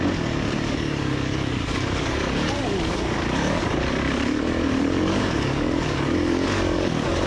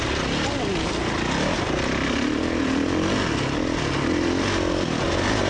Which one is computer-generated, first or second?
first